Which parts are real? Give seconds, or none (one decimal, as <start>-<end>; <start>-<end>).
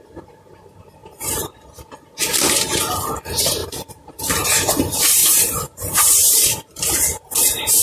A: 0.0-1.0; 2.8-3.6; 4.7-5.2; 7.2-7.8